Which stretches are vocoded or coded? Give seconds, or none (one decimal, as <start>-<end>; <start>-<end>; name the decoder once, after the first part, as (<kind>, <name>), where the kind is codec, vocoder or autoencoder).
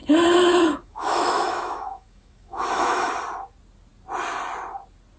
0.0-3.1 (autoencoder, DAC-VAE)